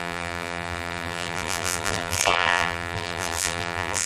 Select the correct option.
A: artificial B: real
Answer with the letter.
A